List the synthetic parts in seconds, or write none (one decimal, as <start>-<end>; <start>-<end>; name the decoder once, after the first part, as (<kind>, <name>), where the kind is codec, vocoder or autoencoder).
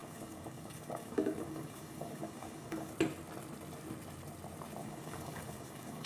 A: 0.0-2.9 (codec, DAC); 4.8-6.1